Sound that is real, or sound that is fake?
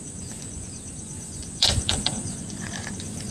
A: fake